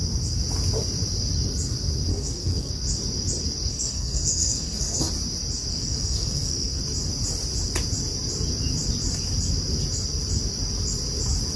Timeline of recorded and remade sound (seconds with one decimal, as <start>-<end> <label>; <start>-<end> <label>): 0.0-2.1 recorded; 2.1-2.7 remade; 2.7-3.7 recorded; 3.7-5.1 remade; 5.1-5.7 recorded; 5.7-6.8 remade; 6.8-11.6 recorded